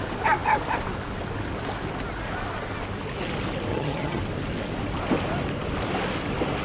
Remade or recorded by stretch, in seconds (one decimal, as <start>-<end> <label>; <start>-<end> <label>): 0.0-3.7 recorded; 3.7-4.2 remade; 4.2-6.6 recorded